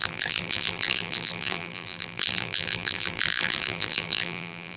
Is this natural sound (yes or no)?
no